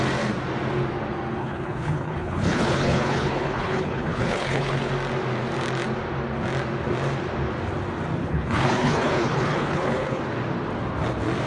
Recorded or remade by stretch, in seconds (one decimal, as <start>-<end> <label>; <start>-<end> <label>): 0.0-1.4 recorded; 1.4-4.9 remade; 4.9-8.2 recorded; 8.2-10.2 remade; 10.2-11.5 recorded